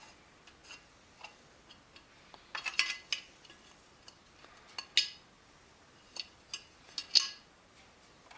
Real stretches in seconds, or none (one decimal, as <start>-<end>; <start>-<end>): 0.0-8.4